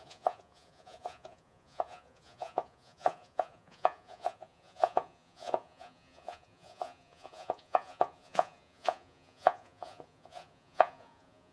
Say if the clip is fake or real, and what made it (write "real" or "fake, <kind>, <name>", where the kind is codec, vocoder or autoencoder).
fake, vocoder, Vocos